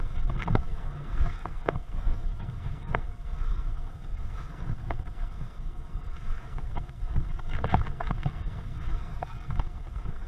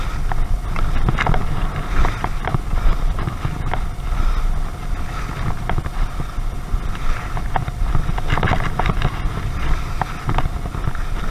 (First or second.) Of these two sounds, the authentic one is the second